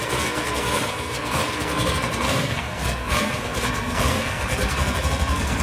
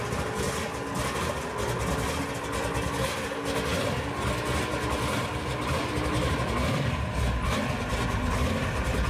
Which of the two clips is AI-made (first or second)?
first